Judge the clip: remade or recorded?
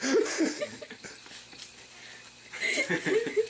recorded